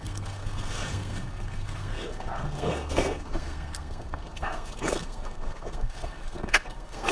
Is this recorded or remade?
remade